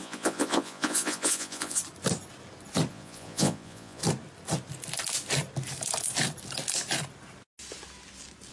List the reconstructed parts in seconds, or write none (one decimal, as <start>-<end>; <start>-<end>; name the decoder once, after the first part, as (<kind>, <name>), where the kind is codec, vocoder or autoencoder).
0.0-1.8 (vocoder, Vocos); 2.9-4.0